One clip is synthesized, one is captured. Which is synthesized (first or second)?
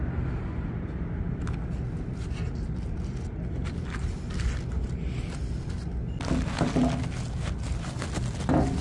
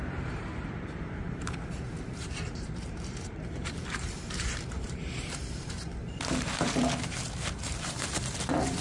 second